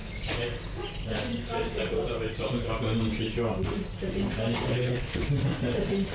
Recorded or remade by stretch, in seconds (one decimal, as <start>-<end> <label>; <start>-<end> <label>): 0.0-4.7 recorded; 4.7-5.3 remade; 5.3-6.1 recorded